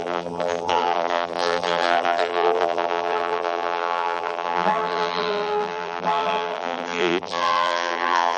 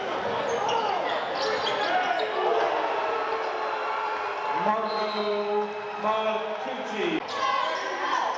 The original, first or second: second